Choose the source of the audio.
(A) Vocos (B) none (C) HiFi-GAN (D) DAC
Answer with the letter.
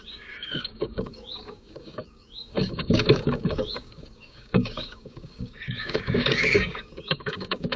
D